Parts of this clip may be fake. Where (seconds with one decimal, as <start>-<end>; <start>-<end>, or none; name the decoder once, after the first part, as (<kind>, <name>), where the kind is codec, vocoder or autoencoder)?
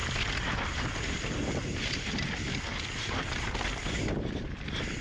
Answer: none